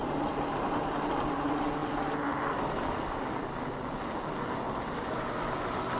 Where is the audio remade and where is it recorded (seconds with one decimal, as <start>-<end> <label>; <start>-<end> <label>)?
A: 0.0-6.0 recorded